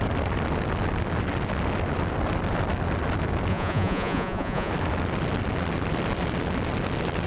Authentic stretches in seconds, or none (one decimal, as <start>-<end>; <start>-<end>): 0.0-3.5; 4.7-7.3